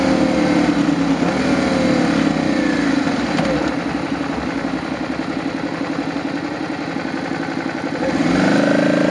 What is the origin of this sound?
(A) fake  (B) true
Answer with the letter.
B